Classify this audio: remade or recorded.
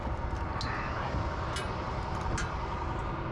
recorded